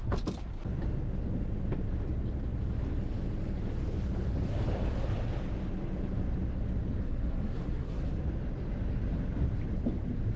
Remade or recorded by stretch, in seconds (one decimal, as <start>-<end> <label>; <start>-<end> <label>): 0.0-7.0 recorded; 7.0-8.0 remade; 8.0-10.4 recorded